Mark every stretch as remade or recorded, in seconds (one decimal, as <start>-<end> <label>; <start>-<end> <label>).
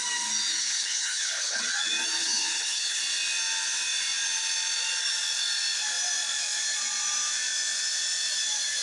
0.0-0.6 recorded; 0.6-1.6 remade; 1.6-2.2 recorded; 2.2-3.0 remade; 3.0-8.8 recorded